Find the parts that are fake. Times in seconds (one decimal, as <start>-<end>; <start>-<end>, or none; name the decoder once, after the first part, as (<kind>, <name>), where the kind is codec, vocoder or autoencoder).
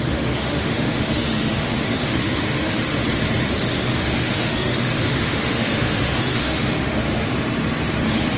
0.0-3.0 (autoencoder, DAC-VAE); 3.6-7.3; 7.9-8.4